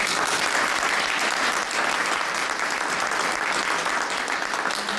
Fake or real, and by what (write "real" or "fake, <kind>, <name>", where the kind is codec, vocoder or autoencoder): real